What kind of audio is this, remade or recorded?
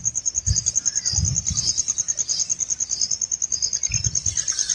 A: recorded